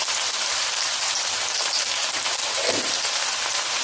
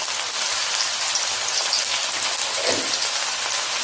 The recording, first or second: second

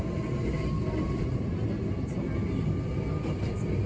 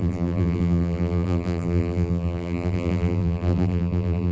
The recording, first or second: first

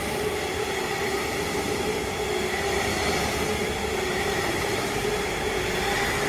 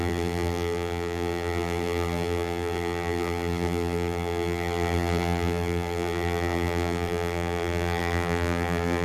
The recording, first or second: first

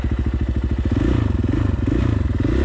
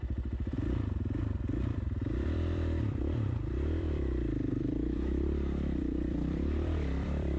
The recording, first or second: first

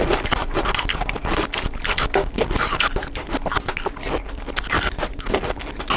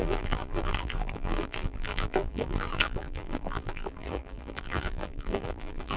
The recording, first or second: first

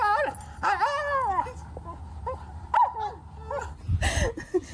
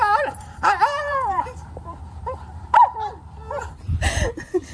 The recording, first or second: first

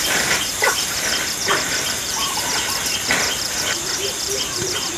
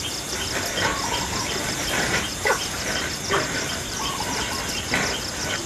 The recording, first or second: second